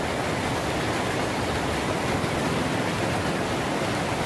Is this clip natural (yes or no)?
yes